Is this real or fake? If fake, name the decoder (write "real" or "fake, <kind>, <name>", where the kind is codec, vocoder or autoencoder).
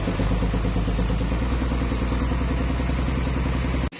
real